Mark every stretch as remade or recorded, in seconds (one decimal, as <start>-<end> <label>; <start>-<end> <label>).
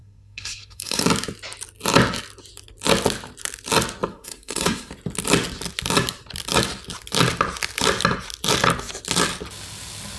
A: 0.0-1.0 remade; 1.0-4.1 recorded; 4.1-4.9 remade; 4.9-10.2 recorded